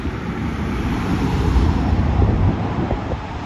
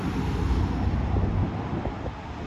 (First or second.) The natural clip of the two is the second